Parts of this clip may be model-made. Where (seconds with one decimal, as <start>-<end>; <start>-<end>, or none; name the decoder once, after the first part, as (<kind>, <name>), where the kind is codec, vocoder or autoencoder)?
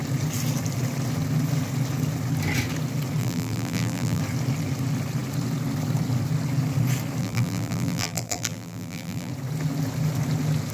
3.2-4.2 (vocoder, BigVGAN v2); 7.2-9.3